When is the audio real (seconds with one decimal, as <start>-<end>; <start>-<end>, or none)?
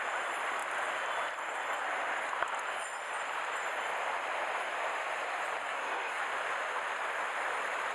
0.0-5.6; 6.2-7.9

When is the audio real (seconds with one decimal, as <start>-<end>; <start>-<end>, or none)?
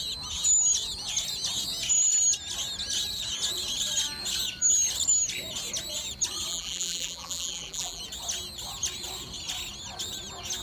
0.0-6.5; 8.0-10.6